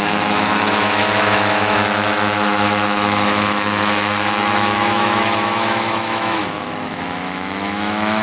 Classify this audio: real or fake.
fake